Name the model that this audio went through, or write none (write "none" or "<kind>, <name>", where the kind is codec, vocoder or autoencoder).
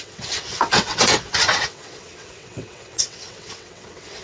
vocoder, WaveNeXt